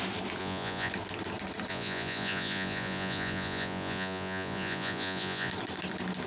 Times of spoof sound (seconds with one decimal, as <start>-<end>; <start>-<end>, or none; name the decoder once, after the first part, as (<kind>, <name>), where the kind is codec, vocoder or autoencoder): 0.4-0.9 (vocoder, Vocos); 1.7-5.5